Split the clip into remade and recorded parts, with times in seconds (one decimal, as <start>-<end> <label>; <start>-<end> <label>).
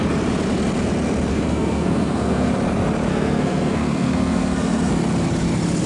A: 0.0-1.3 recorded; 1.3-2.5 remade; 2.5-3.1 recorded; 3.1-4.9 remade; 4.9-5.9 recorded